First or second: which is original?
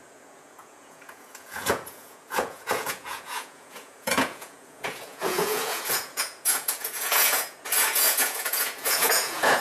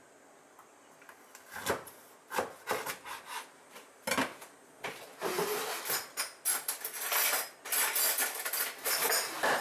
second